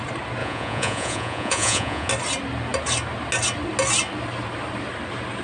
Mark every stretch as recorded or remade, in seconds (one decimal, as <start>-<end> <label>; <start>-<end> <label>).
0.0-0.4 recorded; 0.4-2.1 remade; 2.1-5.4 recorded

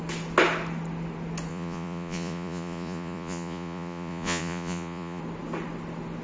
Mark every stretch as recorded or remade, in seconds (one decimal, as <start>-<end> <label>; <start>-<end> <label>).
0.0-1.5 recorded; 1.5-5.2 remade; 5.2-6.2 recorded

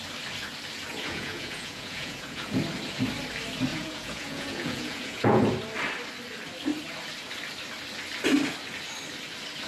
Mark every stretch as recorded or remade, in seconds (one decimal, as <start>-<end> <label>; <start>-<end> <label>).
0.0-0.9 recorded; 0.9-2.6 remade; 2.6-3.7 recorded; 3.7-5.4 remade; 5.4-9.7 recorded

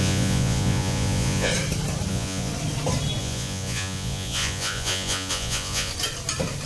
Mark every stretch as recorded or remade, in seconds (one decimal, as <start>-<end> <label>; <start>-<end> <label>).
0.0-1.5 remade; 1.5-2.1 recorded; 2.1-2.5 remade; 2.5-3.2 recorded; 3.2-5.9 remade; 5.9-6.7 recorded

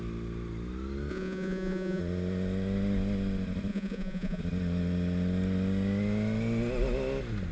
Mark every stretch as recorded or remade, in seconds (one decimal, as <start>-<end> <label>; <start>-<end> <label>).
0.0-1.1 recorded; 1.1-2.0 remade; 2.0-3.7 recorded; 3.7-4.4 remade; 4.4-7.5 recorded